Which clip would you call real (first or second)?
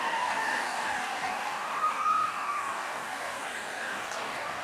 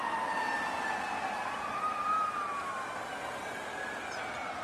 second